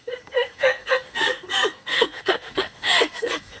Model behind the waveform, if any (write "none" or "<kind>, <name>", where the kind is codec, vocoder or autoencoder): codec, SNAC